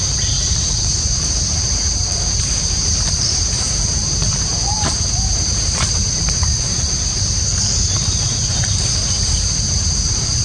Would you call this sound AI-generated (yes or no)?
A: yes